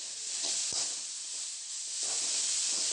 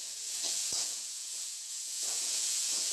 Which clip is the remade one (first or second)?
second